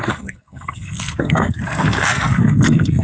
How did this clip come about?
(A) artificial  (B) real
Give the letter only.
A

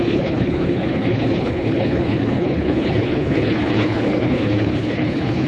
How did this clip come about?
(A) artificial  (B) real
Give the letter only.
A